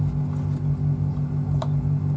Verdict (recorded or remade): recorded